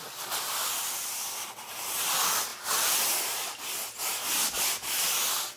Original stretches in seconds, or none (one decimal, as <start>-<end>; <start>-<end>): 0.0-2.5; 3.2-5.6